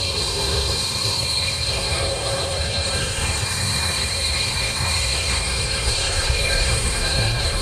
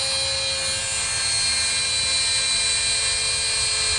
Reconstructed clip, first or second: first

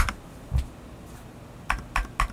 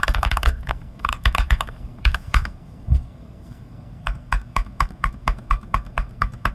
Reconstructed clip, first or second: second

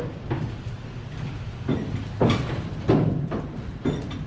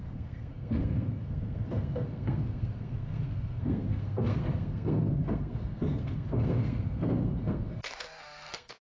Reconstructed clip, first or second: second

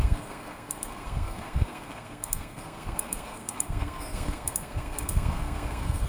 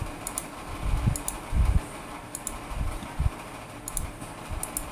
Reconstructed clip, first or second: first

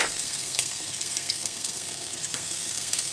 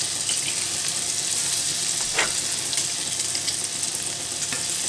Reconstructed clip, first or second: first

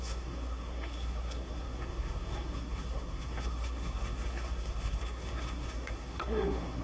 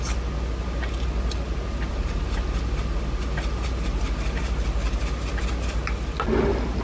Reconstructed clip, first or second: first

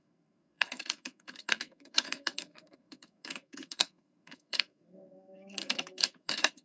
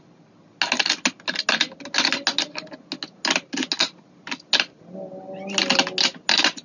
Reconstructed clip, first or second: first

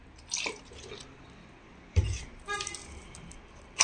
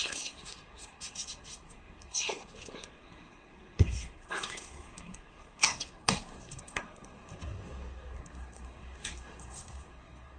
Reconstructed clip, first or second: second